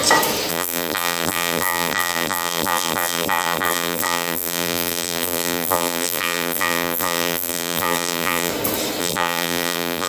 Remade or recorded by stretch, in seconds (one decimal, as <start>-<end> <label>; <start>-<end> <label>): 0.0-0.5 recorded; 0.5-8.5 remade; 8.5-9.0 recorded; 9.0-10.1 remade